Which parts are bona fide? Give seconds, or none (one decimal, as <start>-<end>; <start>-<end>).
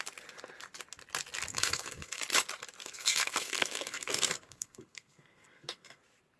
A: 0.0-1.5; 2.2-2.8; 6.0-6.4